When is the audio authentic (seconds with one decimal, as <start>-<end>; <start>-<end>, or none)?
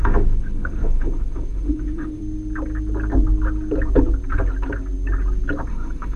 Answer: 2.2-5.7